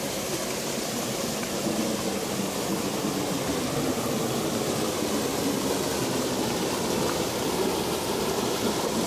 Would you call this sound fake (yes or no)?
no